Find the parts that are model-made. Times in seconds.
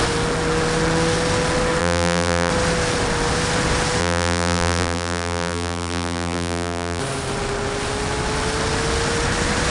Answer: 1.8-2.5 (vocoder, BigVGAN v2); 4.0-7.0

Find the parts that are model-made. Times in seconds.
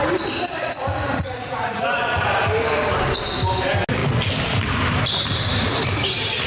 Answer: 0.6-2.4 (vocoder, Vocos)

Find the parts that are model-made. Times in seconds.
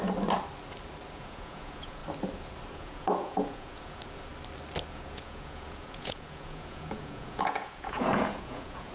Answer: 1.1-2.0 (vocoder, Vocos); 2.7-4.3; 4.9-8.9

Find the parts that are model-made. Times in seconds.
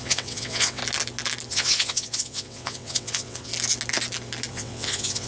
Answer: 0.0-0.8 (vocoder, WaveNeXt); 1.5-3.5; 4.5-5.3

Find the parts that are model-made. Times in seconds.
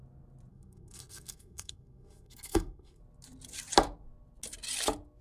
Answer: 0.5-3.0 (codec, SNAC)